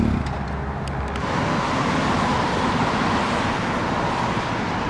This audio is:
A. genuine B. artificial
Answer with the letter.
A